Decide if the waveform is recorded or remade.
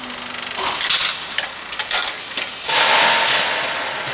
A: recorded